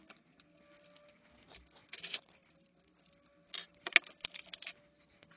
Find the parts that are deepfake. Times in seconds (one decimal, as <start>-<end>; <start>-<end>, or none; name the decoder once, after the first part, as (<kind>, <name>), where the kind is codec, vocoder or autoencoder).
none